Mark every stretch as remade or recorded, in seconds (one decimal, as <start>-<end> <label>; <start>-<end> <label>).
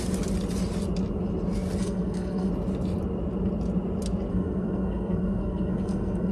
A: 0.0-1.8 recorded; 1.8-2.5 remade; 2.5-4.3 recorded; 4.3-6.3 remade